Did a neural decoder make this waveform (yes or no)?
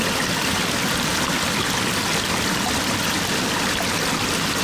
no